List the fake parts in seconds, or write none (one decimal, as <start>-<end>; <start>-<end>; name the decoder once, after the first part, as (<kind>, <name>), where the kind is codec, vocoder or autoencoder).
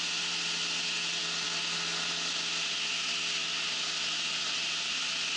none